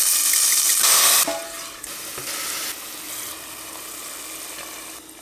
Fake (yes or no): no